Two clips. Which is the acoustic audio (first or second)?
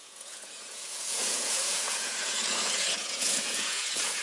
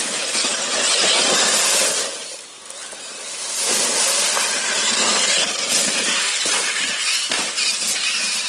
second